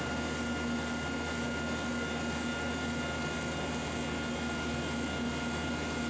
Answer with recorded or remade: recorded